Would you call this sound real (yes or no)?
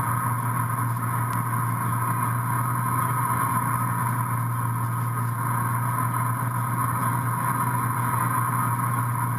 yes